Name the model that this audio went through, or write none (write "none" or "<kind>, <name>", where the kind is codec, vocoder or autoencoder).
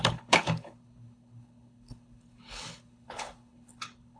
codec, HILCodec